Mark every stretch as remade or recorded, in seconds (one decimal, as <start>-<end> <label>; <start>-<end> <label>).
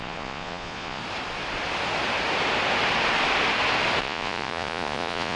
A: 0.0-1.0 remade; 1.0-4.0 recorded; 4.0-5.4 remade